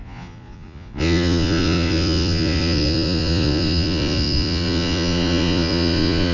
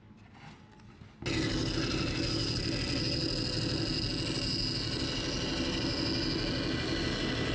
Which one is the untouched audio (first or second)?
second